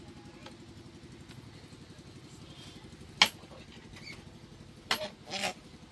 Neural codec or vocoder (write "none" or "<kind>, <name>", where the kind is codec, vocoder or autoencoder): none